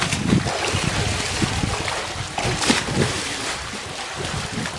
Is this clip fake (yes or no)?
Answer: no